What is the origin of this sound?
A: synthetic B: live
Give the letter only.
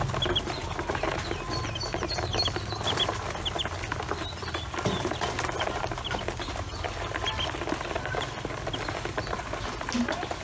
B